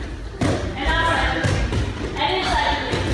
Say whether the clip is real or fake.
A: real